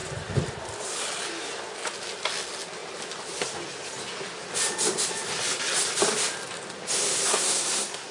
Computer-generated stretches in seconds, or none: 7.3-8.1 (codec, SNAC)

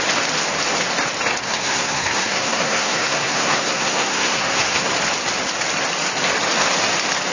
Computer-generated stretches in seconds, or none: 1.4-4.9 (codec, SNAC)

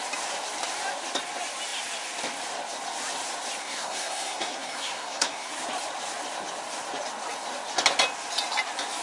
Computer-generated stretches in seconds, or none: 3.6-5.5 (codec, SNAC)

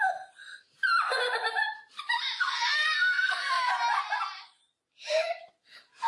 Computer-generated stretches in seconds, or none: 2.4-3.7 (codec, SNAC)

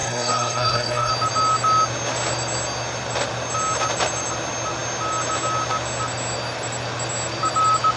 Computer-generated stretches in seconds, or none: 0.0-1.1 (codec, SNAC)

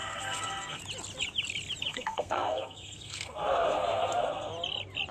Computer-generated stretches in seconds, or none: 0.0-0.8 (codec, SNAC); 1.9-4.5

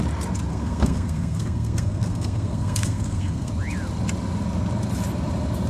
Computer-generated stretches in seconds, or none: 0.5-3.5 (codec, SNAC)

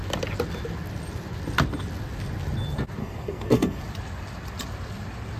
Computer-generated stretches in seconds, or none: 3.0-3.8 (codec, SNAC)